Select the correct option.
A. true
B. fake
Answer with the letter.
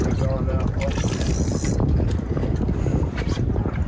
A